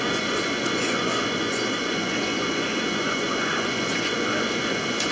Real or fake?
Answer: fake